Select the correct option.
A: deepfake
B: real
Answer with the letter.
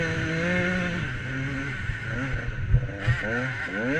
B